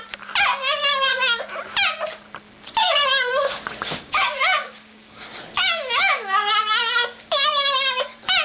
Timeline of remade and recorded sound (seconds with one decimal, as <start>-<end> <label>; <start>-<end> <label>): 0.0-0.5 recorded; 0.5-1.4 remade; 1.4-2.8 recorded; 2.8-7.8 remade; 7.8-8.4 recorded